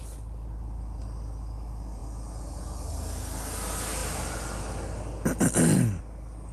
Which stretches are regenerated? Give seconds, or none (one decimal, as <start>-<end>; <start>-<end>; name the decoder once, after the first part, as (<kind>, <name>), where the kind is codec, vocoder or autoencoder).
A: none